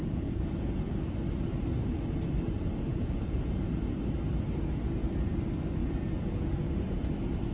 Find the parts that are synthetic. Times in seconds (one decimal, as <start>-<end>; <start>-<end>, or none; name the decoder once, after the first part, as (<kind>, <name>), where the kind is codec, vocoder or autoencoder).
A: 0.0-0.9 (vocoder, Vocos); 2.9-3.8; 5.8-7.1

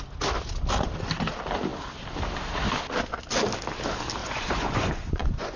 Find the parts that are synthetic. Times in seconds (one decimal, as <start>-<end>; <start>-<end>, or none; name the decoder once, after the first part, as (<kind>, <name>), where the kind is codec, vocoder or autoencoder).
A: 4.2-5.6 (vocoder, Vocos)

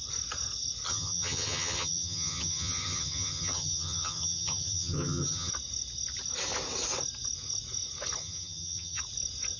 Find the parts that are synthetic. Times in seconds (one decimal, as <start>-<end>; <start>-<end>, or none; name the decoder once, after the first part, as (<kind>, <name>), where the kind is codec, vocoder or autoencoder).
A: 0.9-5.5 (vocoder, HiFi-GAN); 8.2-9.0

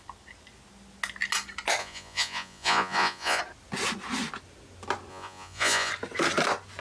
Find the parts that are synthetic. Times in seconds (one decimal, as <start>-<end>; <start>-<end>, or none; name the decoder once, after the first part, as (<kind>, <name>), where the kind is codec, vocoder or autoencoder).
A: 1.8-3.4 (vocoder, Vocos); 5.1-5.9